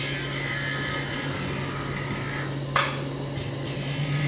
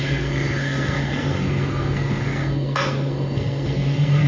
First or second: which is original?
first